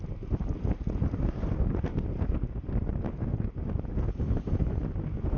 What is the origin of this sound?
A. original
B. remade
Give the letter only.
A